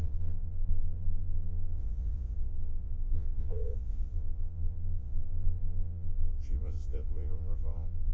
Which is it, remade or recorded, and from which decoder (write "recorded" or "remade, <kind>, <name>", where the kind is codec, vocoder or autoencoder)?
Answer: remade, vocoder, Vocos